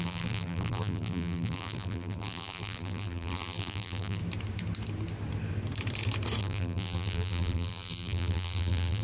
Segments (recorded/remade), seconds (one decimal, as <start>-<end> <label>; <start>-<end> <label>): 0.0-4.2 remade; 4.2-6.4 recorded; 6.4-9.0 remade